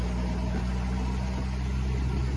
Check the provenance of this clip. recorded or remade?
recorded